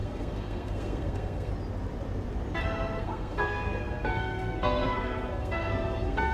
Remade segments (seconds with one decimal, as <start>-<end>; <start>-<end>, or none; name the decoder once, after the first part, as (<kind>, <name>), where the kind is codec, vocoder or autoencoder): 0.0-1.5 (codec, SNAC); 2.6-6.3